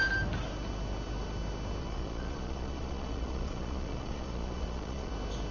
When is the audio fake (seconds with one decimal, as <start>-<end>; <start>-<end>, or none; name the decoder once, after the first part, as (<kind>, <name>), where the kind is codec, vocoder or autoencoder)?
1.8-5.1 (vocoder, Vocos)